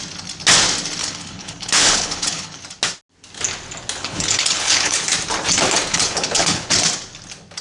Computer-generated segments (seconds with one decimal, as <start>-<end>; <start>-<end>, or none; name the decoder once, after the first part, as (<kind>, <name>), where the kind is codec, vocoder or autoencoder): 1.0-2.6 (codec, HILCodec); 4.0-5.0; 5.9-6.7